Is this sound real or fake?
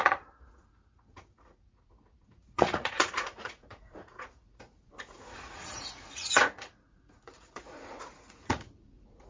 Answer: fake